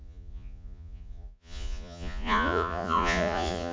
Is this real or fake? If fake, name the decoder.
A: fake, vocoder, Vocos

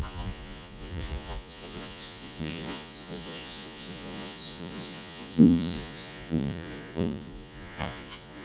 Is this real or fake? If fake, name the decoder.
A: fake, vocoder, Vocos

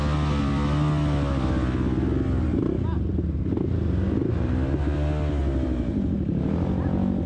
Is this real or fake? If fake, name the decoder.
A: real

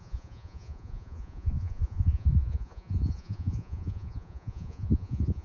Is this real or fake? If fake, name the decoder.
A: fake, vocoder, Vocos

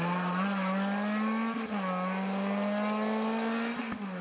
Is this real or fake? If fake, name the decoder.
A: real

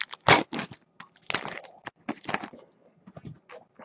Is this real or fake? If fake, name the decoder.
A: real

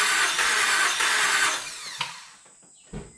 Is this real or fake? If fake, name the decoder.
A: real